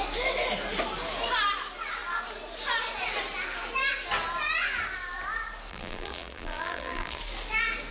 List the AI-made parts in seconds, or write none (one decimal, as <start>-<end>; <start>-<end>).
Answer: 5.7-7.2